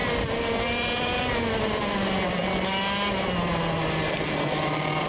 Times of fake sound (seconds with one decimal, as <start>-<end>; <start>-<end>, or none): none